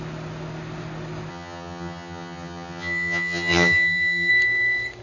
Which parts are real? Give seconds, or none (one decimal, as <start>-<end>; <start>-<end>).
0.0-1.3; 4.3-5.0